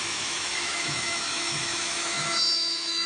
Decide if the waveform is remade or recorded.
remade